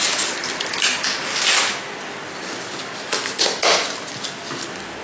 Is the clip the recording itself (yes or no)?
yes